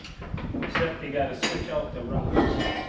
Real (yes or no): yes